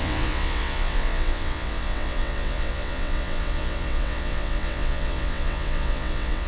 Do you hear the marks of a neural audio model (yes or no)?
yes